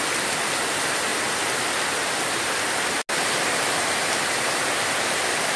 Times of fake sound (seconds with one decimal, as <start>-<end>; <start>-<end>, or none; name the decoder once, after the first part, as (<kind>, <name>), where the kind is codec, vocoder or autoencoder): none